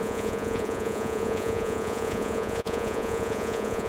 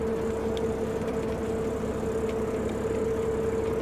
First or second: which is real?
second